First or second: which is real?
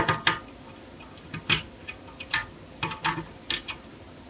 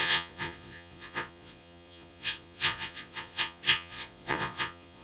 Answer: first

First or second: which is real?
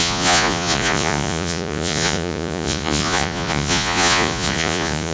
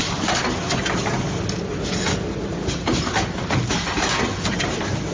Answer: second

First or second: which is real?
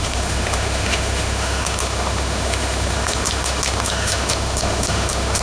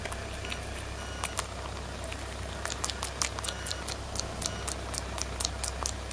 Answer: second